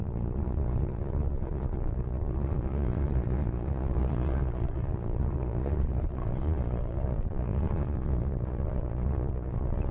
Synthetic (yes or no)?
yes